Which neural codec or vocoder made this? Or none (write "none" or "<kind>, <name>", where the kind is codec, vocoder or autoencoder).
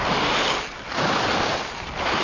none